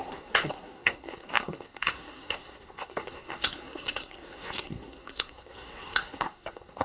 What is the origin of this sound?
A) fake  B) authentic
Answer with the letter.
A